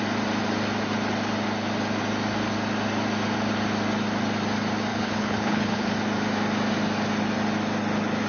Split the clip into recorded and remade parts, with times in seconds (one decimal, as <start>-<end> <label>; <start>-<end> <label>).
0.0-4.9 recorded; 4.9-5.9 remade; 5.9-8.3 recorded